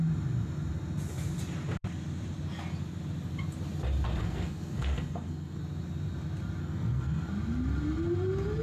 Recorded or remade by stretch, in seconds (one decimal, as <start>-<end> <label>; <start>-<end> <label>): 0.0-4.2 recorded; 4.2-5.6 remade; 5.6-6.6 recorded; 6.6-7.3 remade; 7.3-8.6 recorded